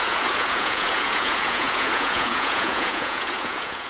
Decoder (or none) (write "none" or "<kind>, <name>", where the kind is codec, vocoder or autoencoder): vocoder, Vocos